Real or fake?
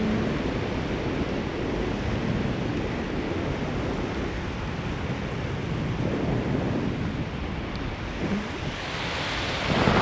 real